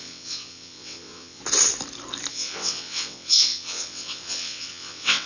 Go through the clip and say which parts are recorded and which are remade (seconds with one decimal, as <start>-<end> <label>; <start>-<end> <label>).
0.0-1.4 remade; 1.4-2.3 recorded; 2.3-5.3 remade